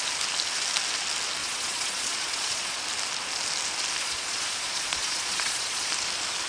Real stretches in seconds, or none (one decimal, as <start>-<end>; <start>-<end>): 0.0-1.4; 2.8-4.0; 5.9-6.5